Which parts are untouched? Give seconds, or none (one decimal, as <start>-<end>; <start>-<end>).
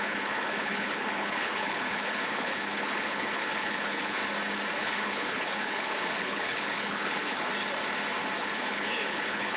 4.2-4.8; 7.5-8.4